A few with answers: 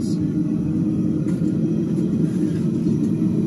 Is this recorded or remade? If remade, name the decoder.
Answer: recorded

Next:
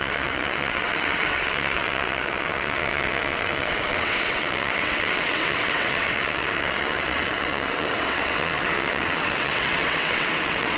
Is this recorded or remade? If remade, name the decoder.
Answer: remade, vocoder, WaveNeXt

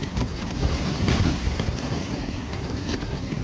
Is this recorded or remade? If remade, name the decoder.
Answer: remade, codec, SNAC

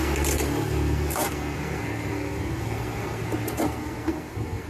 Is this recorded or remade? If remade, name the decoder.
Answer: remade, codec, SNAC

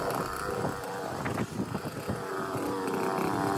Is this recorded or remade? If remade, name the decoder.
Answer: recorded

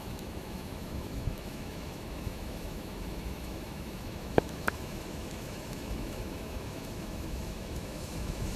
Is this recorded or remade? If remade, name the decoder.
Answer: remade, autoencoder, DAC-VAE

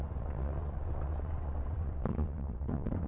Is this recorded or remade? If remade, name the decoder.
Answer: remade, vocoder, WaveNeXt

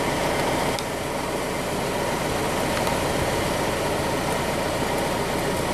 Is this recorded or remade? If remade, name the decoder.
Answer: recorded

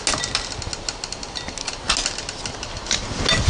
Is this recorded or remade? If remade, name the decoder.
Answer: recorded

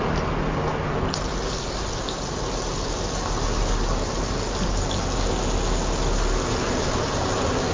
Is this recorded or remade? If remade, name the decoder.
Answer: recorded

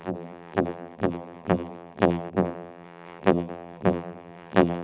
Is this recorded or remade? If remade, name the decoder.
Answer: remade, vocoder, BigVGAN v2